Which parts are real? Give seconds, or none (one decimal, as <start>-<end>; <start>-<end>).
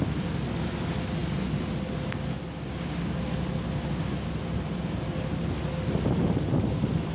0.0-7.1